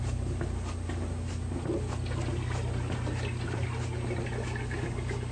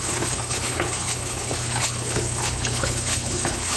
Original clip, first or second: first